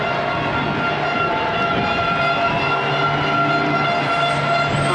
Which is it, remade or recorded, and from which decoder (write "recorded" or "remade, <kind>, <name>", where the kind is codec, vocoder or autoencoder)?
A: recorded